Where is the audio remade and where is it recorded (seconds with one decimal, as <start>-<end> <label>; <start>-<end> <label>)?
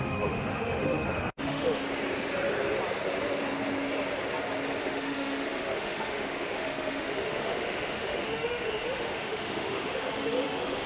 0.0-1.8 remade; 1.8-4.8 recorded; 4.8-10.9 remade